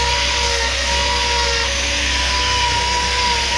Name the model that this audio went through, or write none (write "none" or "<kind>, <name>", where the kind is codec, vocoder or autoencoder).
codec, SNAC